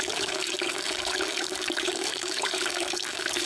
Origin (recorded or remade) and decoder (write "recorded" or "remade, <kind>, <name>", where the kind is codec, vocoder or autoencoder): remade, codec, DAC